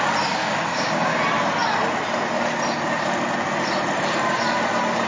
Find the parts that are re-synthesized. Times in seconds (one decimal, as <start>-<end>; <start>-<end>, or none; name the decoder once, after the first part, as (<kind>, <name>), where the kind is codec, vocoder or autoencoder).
0.4-1.2 (codec, DAC)